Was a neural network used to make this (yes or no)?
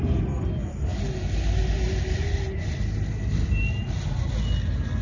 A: no